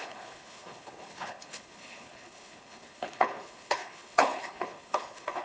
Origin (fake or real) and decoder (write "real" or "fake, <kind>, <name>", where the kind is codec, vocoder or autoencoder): fake, codec, HILCodec